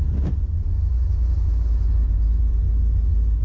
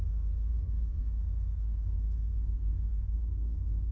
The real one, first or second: first